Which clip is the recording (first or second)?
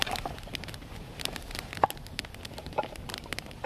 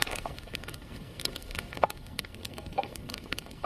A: first